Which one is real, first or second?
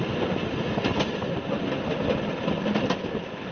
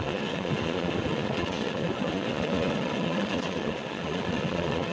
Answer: first